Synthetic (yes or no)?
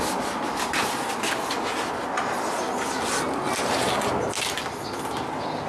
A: no